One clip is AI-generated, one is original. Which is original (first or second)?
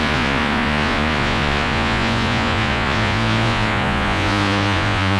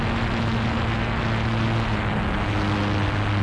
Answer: second